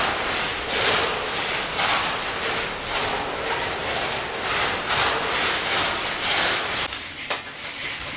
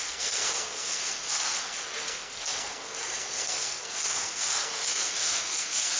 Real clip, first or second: first